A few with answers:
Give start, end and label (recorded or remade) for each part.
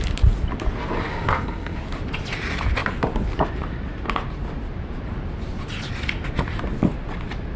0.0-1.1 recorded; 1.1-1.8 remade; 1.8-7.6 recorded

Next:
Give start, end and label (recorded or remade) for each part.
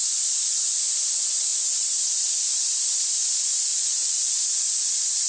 0.0-3.5 recorded; 3.5-5.3 remade